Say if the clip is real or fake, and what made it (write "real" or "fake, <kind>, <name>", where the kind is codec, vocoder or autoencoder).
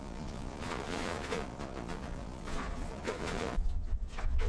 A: fake, vocoder, Vocos